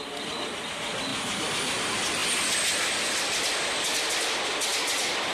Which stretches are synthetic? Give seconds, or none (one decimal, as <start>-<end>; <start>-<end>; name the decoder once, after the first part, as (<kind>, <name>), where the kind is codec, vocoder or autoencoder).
none